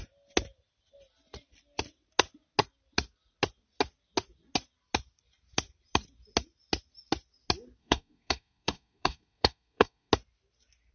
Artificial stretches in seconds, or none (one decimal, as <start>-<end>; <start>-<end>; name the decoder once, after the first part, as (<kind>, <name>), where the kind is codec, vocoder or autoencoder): 7.8-10.1 (codec, SNAC)